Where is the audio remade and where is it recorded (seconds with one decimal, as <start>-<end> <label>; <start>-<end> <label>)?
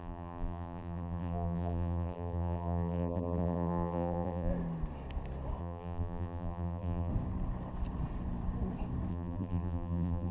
0.0-4.5 remade; 4.5-5.6 recorded; 5.6-7.1 remade; 7.1-9.1 recorded; 9.1-10.3 remade